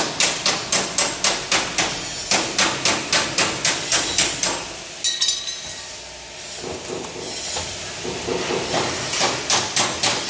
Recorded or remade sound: recorded